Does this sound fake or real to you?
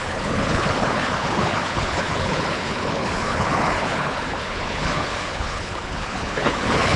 fake